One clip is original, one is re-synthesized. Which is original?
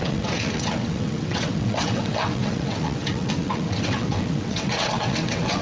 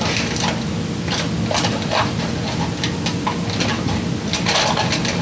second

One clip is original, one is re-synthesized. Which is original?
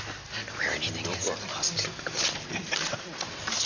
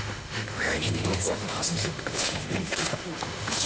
first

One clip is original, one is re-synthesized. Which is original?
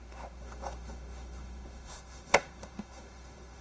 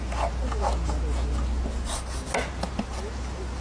second